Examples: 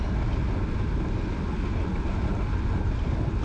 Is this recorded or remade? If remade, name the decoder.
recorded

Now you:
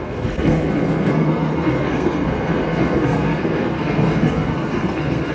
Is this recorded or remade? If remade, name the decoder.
remade, codec, SNAC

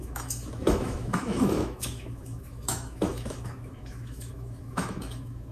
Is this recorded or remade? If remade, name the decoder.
remade, autoencoder, DAC-VAE